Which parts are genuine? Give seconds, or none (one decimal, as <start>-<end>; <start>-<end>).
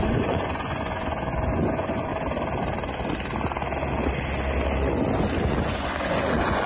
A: 2.1-5.5